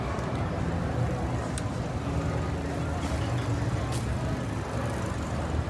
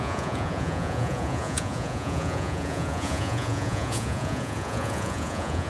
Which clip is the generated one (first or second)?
second